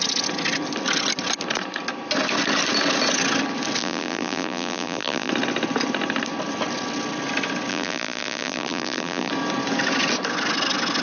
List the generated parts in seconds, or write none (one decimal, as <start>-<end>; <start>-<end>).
3.8-5.3; 7.7-9.3

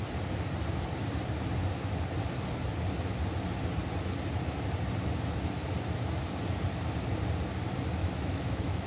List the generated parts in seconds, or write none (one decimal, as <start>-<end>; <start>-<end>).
8.0-8.9

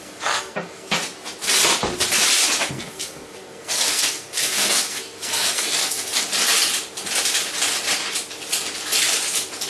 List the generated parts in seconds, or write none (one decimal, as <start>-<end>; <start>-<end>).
0.0-1.0; 2.7-6.1

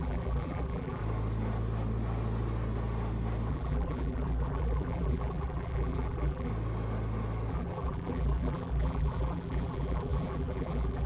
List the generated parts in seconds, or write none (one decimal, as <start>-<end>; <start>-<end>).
0.0-1.0; 3.5-6.5; 7.5-11.1

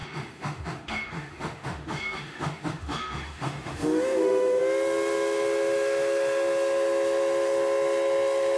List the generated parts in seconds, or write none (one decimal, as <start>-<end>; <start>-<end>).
0.0-4.6

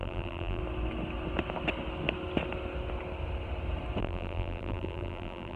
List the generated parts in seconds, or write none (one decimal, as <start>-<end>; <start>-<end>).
0.0-0.6; 4.0-5.6

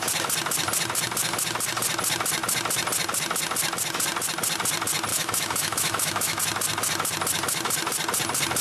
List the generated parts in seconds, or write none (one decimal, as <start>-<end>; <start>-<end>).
5.1-6.4